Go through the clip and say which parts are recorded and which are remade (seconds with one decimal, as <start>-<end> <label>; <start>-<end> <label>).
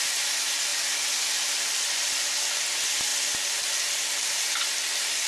0.0-5.3 recorded